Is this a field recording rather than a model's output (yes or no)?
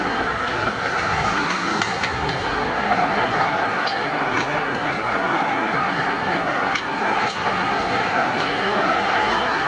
no